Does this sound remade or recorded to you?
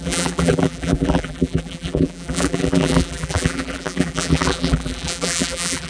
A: remade